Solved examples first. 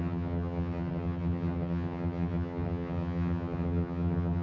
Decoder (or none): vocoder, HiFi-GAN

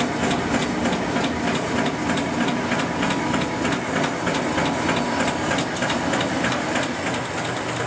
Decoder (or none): none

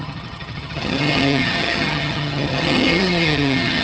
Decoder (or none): vocoder, HiFi-GAN